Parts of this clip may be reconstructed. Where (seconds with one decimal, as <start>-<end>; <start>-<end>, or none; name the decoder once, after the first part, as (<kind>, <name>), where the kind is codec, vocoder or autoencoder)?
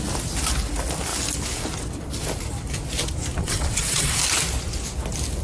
3.4-4.2 (vocoder, WaveNeXt)